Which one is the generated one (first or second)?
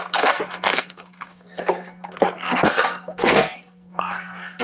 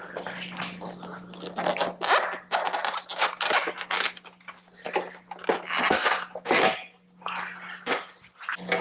first